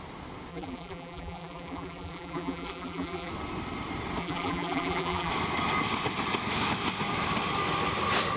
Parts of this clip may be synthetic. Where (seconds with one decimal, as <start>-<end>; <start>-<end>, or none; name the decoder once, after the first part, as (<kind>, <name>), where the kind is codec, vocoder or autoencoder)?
0.5-3.3 (vocoder, BigVGAN v2); 4.2-5.3